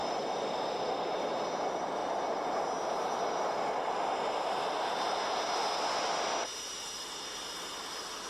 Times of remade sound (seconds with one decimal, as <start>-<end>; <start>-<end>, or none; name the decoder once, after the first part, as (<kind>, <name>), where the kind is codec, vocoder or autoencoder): none